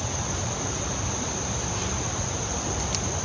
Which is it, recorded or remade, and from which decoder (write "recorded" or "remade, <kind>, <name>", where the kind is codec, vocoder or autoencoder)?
recorded